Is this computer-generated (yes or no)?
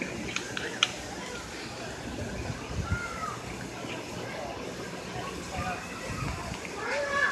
no